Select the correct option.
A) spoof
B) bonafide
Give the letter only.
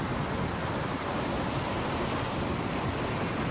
B